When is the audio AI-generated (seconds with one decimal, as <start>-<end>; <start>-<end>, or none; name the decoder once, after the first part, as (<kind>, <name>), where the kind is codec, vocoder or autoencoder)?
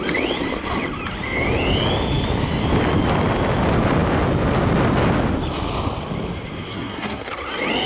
6.7-7.3 (codec, SNAC)